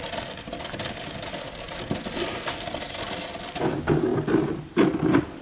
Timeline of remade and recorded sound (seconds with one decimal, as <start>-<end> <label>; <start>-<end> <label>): 0.0-5.4 recorded